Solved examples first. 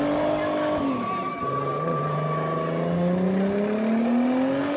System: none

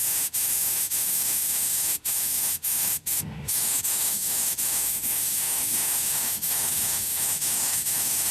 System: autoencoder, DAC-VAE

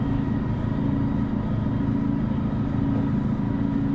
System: none